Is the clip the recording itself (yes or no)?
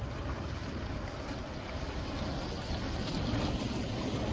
yes